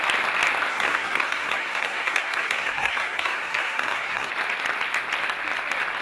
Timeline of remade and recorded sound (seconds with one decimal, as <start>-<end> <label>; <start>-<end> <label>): 0.0-0.7 recorded; 0.7-4.3 remade; 4.3-6.0 recorded